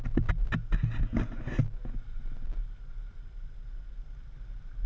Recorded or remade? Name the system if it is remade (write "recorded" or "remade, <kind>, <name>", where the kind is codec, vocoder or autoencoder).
recorded